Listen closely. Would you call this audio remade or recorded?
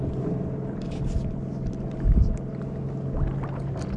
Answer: recorded